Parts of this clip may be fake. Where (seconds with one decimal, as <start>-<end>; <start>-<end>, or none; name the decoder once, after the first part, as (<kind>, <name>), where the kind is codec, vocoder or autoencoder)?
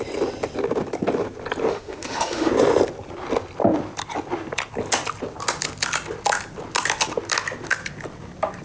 1.7-2.5 (autoencoder, DAC-VAE)